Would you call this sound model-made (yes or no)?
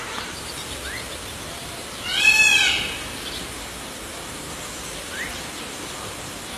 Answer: yes